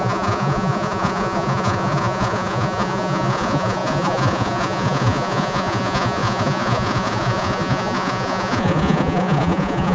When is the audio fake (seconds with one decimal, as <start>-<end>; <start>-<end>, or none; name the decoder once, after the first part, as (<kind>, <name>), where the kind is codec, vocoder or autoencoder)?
0.0-9.9 (vocoder, Vocos)